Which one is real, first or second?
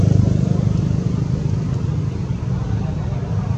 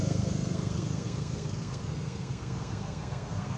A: first